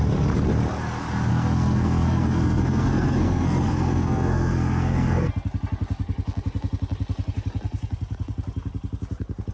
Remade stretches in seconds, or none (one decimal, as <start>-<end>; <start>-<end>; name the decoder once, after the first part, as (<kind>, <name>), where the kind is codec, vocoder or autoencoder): 1.3-5.3 (codec, SNAC)

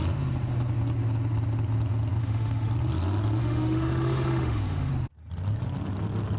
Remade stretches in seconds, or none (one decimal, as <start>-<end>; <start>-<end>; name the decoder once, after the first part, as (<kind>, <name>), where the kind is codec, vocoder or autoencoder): 2.2-2.7 (autoencoder, DAC-VAE); 3.4-4.9

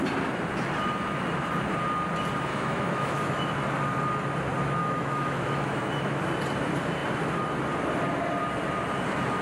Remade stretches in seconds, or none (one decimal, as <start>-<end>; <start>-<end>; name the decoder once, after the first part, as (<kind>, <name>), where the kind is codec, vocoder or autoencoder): 2.5-3.5 (autoencoder, DAC-VAE); 4.8-6.2

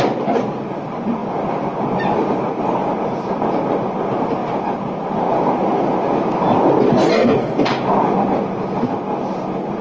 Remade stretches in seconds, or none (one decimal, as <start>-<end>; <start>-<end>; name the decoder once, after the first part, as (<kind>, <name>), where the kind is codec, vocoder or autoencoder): 7.1-7.7 (codec, SNAC)

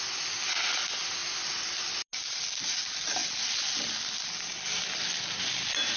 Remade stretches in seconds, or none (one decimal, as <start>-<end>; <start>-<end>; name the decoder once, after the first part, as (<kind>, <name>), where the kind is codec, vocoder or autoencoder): none